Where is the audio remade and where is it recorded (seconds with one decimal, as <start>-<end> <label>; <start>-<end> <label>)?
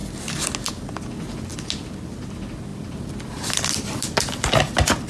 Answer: 0.0-1.5 recorded; 1.5-2.1 remade; 2.1-2.7 recorded; 2.7-4.2 remade; 4.2-5.1 recorded